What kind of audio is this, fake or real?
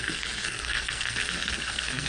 fake